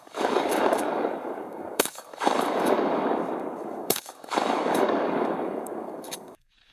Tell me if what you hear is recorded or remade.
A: remade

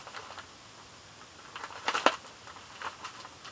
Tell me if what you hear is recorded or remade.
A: recorded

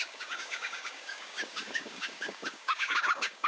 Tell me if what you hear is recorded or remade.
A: remade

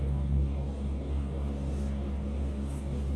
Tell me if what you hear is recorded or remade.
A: remade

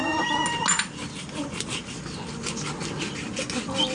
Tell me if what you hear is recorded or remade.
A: recorded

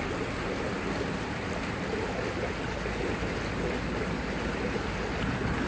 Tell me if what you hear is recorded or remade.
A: recorded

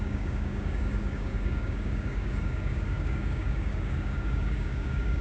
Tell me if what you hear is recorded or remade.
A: remade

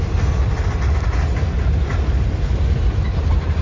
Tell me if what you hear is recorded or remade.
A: recorded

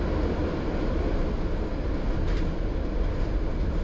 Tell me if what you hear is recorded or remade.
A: recorded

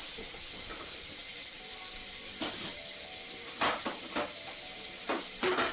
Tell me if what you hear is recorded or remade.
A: recorded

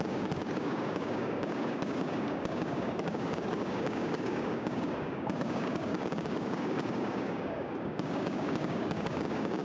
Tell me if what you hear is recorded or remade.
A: remade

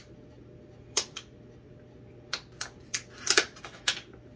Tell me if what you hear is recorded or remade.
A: recorded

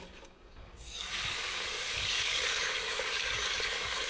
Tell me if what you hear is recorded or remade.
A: remade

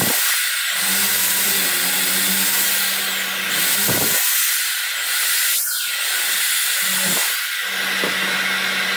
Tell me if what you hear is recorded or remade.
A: recorded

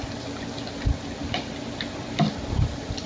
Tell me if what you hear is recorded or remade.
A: recorded